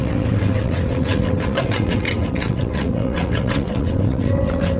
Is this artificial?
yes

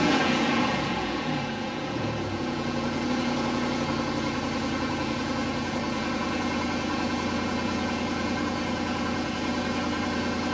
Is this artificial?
yes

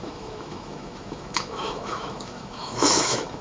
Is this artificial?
yes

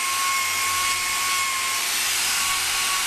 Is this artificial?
no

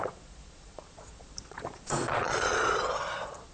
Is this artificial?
yes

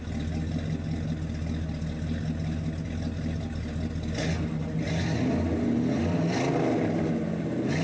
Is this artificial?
no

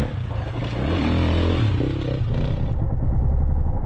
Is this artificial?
no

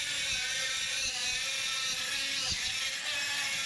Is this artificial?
no